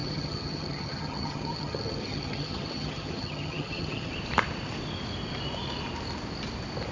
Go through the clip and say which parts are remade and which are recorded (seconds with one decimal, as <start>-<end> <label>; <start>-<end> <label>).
0.0-4.1 remade; 4.1-6.9 recorded